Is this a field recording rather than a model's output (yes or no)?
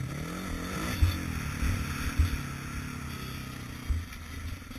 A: yes